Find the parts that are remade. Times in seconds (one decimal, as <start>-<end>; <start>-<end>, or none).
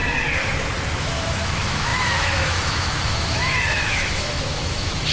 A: 1.0-5.1